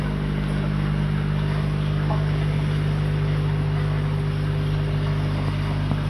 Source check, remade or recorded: recorded